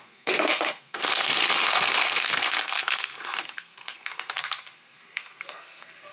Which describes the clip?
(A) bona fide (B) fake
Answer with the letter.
B